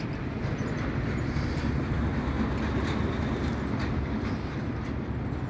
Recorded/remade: recorded